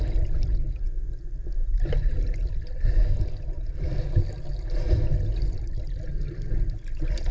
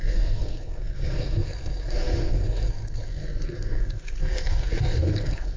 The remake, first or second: second